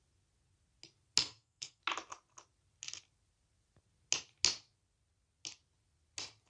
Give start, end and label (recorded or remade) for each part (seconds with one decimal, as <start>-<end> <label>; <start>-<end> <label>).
0.0-1.2 recorded; 1.2-1.8 remade; 1.8-6.5 recorded